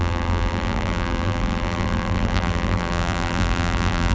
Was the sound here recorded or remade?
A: remade